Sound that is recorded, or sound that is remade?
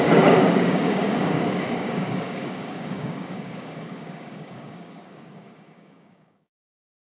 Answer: remade